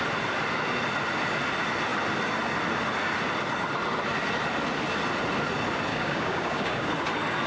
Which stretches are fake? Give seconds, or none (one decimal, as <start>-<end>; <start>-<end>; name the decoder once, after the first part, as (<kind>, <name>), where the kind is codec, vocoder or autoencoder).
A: 5.9-6.9 (codec, DAC)